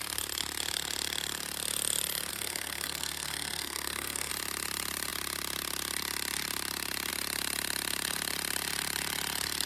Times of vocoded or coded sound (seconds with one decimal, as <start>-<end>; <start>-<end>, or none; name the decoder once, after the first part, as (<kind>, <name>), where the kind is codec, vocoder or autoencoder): 2.3-4.3 (codec, SNAC)

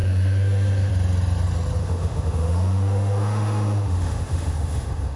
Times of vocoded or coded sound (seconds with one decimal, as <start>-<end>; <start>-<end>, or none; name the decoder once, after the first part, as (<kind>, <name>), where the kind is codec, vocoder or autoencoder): 0.0-0.9 (autoencoder, DAC-VAE); 1.8-5.2

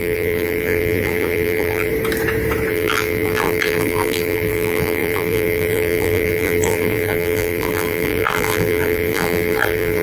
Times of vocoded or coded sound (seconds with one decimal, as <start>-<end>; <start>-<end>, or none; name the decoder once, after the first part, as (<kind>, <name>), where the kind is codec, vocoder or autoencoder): 0.0-1.9 (vocoder, BigVGAN v2); 2.7-10.0

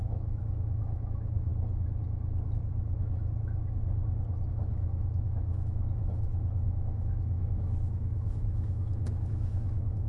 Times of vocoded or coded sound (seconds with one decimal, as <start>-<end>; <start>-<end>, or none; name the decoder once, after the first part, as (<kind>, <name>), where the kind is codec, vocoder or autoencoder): 0.0-1.5 (autoencoder, DAC-VAE); 4.5-10.1

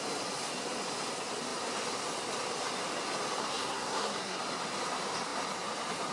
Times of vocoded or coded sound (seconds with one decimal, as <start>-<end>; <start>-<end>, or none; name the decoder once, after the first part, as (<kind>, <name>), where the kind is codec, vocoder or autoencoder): 3.4-4.4 (codec, SNAC)

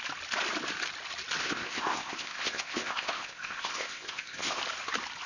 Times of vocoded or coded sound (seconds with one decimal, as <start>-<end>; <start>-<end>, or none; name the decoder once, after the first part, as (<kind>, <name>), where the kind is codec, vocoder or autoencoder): 1.4-4.6 (codec, ZipCodec)

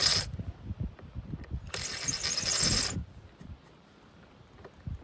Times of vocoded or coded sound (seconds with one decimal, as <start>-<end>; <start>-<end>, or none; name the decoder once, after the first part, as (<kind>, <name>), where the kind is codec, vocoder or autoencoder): none

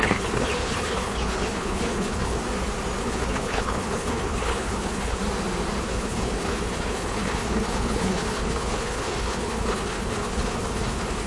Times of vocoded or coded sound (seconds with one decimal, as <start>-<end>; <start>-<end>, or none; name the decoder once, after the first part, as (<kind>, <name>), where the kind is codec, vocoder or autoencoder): 0.0-2.4 (codec, HILCodec); 3.0-5.2; 5.8-11.3